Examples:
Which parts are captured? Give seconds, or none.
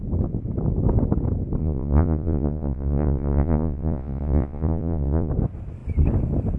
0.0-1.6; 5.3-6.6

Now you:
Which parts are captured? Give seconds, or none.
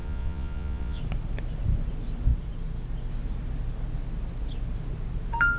1.0-5.6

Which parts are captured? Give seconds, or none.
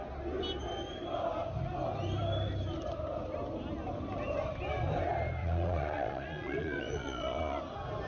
0.0-5.4; 7.6-8.1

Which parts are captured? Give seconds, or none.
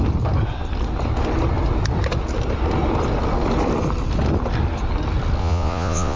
0.0-5.4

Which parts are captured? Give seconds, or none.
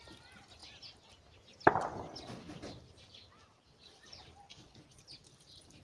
0.0-4.5; 5.0-5.8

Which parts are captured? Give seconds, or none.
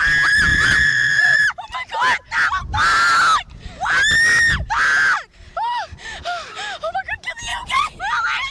0.0-0.5; 1.4-7.5; 8.0-8.5